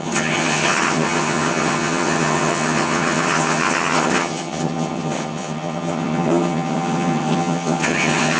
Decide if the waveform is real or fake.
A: fake